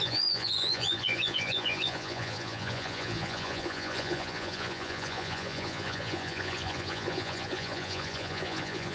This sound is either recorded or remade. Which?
remade